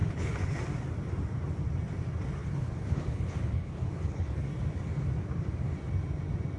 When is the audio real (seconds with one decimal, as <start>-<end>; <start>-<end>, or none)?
0.5-2.4; 4.5-6.6